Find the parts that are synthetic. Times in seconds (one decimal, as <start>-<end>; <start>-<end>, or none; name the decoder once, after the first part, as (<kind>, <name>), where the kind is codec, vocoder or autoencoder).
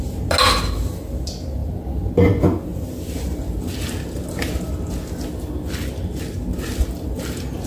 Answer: none